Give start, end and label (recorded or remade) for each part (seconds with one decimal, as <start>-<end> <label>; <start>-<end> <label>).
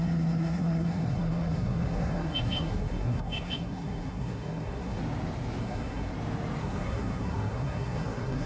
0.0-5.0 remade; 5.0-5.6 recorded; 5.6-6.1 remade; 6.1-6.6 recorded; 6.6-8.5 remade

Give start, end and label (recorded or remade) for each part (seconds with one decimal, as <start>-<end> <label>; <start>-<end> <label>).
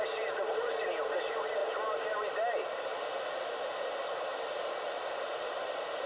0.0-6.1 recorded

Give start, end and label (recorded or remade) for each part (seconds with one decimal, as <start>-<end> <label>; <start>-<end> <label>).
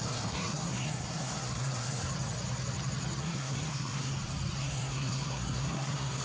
0.0-2.1 remade; 2.1-3.2 recorded; 3.2-4.1 remade; 4.1-4.6 recorded; 4.6-6.2 remade